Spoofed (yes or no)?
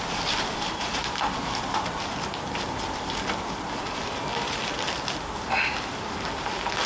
no